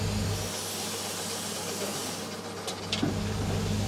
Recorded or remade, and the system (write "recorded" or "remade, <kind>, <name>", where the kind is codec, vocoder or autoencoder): recorded